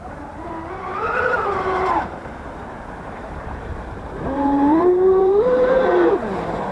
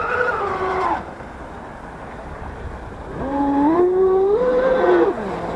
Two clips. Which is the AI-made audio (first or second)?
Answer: first